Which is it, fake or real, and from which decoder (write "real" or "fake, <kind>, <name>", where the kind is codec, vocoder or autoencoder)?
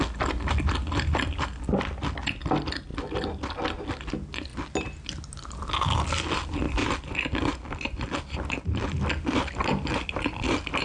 real